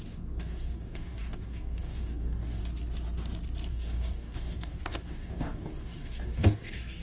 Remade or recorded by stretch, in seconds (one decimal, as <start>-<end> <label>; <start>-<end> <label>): 0.0-2.6 remade; 2.6-3.7 recorded; 3.7-7.0 remade